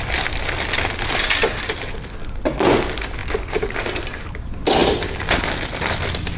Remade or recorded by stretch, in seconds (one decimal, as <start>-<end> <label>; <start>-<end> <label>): 0.0-6.4 recorded